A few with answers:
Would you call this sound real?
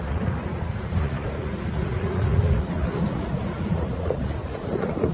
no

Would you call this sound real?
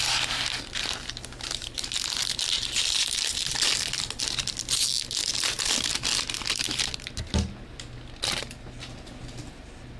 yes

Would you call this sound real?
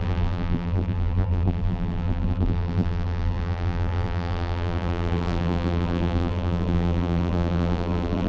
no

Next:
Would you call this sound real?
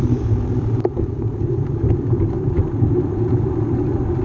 no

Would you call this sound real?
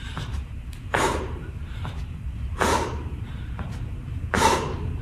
no